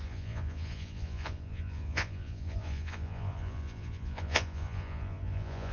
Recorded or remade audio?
remade